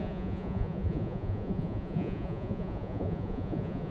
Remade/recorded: remade